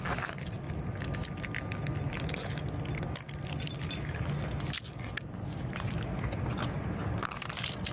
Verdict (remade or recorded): recorded